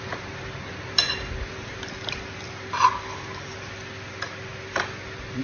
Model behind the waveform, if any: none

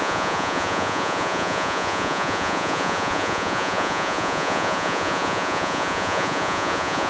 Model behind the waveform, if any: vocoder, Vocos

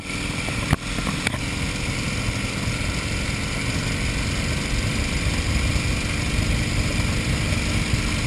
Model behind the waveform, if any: none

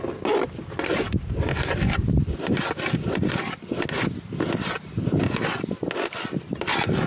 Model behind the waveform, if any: none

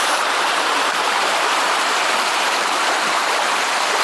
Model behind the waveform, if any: vocoder, BigVGAN v2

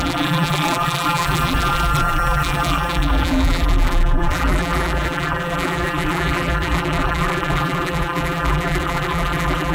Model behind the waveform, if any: vocoder, BigVGAN v2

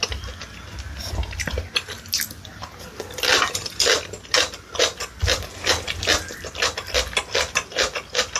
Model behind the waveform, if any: none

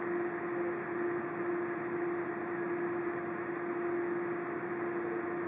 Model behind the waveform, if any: none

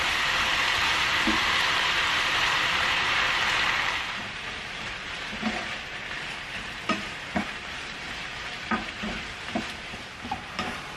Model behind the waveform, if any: vocoder, BigVGAN v2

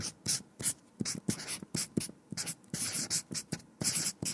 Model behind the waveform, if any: none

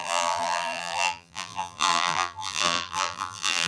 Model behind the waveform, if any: vocoder, BigVGAN v2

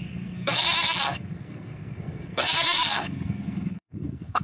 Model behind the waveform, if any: codec, SNAC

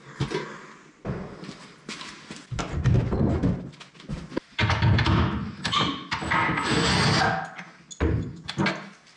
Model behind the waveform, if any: none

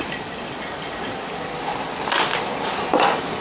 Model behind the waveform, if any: none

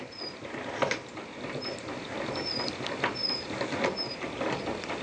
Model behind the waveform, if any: none